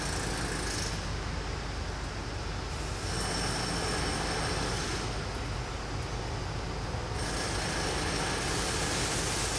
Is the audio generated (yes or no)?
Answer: no